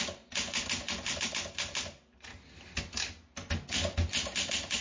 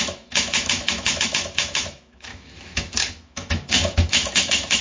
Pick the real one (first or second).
first